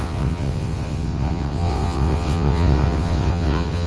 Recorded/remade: remade